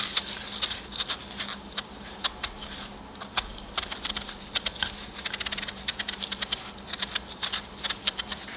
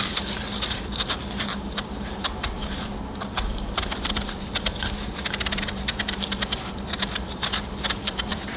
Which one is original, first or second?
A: first